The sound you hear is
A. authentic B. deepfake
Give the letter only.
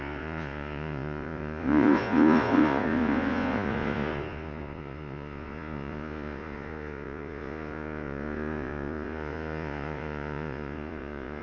B